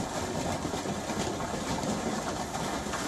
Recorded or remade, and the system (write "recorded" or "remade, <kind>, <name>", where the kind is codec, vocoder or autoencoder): recorded